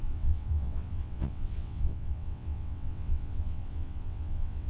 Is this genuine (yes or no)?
no